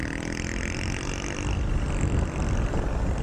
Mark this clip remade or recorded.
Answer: recorded